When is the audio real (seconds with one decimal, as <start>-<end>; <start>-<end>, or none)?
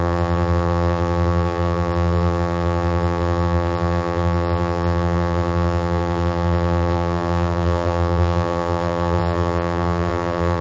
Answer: none